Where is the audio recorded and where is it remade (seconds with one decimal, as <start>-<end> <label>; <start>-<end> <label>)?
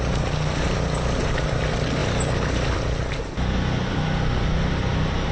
0.0-5.3 recorded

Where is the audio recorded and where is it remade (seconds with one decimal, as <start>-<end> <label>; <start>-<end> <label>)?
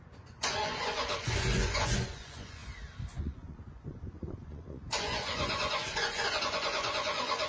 0.0-2.6 remade; 2.6-3.2 recorded; 3.2-7.5 remade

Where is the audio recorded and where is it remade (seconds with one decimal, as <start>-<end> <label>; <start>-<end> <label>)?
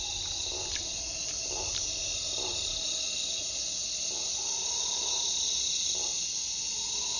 0.0-7.2 recorded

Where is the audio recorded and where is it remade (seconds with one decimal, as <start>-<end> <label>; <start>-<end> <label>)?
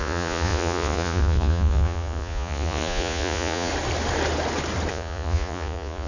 0.0-3.7 remade; 3.7-4.9 recorded; 4.9-6.1 remade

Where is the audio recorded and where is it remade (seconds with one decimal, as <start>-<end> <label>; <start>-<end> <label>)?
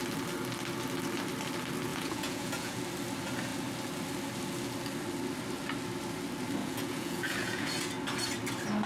0.0-1.9 recorded; 1.9-2.8 remade; 2.8-6.6 recorded; 6.6-7.9 remade; 7.9-8.9 recorded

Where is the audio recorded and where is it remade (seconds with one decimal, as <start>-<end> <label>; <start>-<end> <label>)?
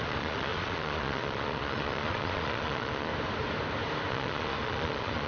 0.0-3.1 remade; 3.1-4.1 recorded; 4.1-5.3 remade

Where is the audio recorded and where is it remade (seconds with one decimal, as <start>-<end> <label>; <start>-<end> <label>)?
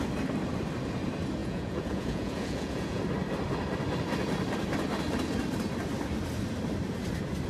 0.0-1.4 recorded; 1.4-3.0 remade; 3.0-7.5 recorded